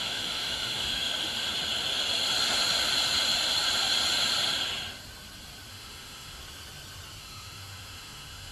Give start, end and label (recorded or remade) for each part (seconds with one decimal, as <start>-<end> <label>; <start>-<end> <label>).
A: 0.0-1.5 remade; 1.5-5.7 recorded; 5.7-6.4 remade; 6.4-7.2 recorded; 7.2-8.5 remade